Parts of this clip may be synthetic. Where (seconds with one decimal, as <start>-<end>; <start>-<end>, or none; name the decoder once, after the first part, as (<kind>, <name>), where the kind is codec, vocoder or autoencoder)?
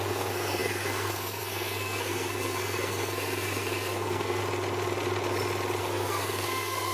0.0-4.4 (codec, SNAC); 5.8-6.9